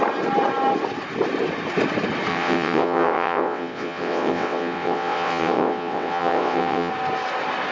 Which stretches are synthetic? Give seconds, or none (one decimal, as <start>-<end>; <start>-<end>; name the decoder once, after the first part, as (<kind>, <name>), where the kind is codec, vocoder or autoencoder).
2.3-6.9 (vocoder, WaveNeXt)